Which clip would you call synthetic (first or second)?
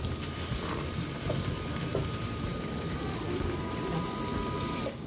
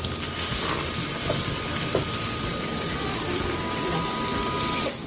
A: first